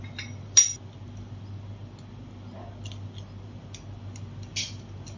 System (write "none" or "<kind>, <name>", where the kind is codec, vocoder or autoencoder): none